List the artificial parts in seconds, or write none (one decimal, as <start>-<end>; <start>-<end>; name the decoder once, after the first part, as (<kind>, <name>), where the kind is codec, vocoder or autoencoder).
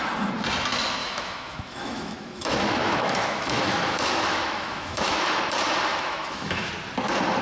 1.0-5.4 (autoencoder, DAC-VAE); 5.9-6.7